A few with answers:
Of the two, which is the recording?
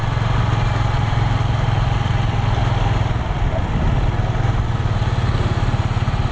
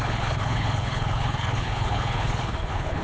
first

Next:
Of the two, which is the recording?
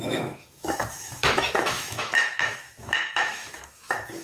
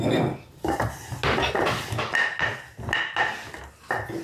second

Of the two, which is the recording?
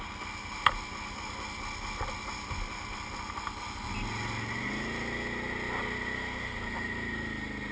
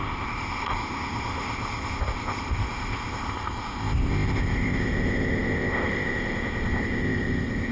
first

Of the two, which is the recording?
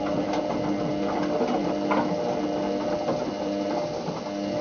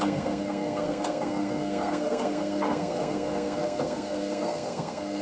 first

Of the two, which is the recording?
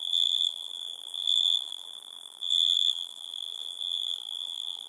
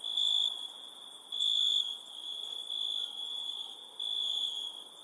second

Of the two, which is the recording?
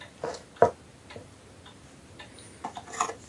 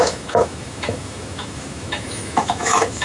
first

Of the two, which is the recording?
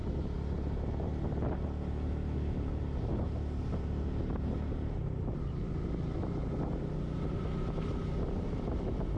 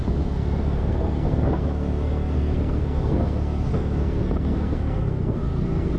first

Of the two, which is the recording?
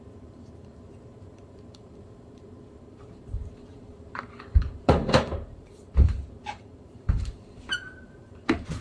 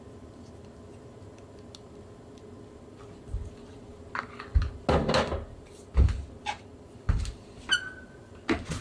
second